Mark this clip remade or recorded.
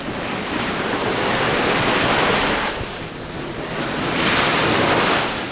recorded